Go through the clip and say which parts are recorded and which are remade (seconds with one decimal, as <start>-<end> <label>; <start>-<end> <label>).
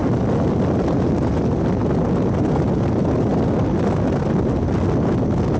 0.0-5.6 recorded